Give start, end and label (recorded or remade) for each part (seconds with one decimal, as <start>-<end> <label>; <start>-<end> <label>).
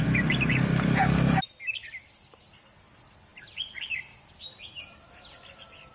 0.0-5.9 recorded